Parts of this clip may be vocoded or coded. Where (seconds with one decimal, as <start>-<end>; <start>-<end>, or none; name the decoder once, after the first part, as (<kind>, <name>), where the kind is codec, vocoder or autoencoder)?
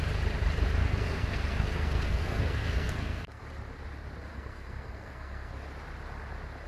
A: 0.8-3.4 (codec, SNAC); 4.3-5.5